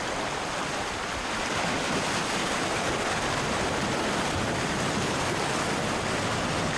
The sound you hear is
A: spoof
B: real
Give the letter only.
B